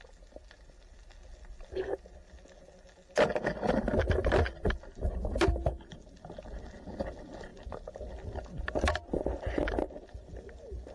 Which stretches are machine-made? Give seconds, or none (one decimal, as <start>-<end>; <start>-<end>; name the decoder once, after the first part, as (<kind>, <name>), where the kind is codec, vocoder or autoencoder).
none